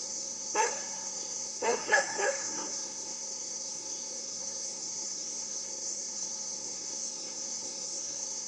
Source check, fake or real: fake